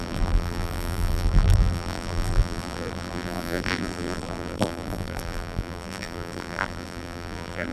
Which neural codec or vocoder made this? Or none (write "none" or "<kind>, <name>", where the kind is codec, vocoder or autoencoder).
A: vocoder, BigVGAN v2